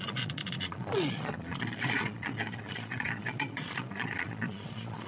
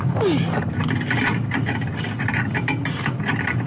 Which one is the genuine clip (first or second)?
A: second